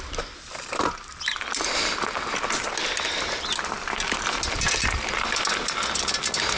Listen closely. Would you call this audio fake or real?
real